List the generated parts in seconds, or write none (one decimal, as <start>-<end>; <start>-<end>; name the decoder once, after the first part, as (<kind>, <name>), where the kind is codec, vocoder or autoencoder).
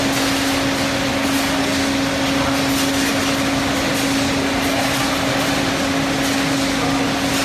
none